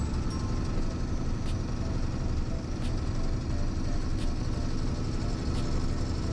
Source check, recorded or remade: recorded